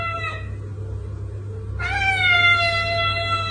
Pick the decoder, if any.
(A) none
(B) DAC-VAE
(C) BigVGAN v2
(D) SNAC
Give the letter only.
A